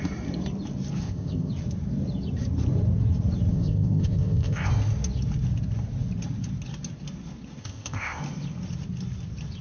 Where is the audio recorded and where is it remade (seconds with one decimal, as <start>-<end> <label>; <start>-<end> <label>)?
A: 0.0-1.0 recorded; 1.0-1.5 remade; 1.5-3.5 recorded; 3.5-4.7 remade; 4.7-7.6 recorded; 7.6-8.2 remade; 8.2-9.6 recorded